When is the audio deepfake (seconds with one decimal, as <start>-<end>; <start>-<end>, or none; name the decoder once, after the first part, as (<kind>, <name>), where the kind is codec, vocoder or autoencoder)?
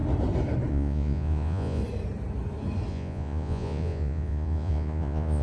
0.7-1.8 (vocoder, Vocos); 2.9-5.4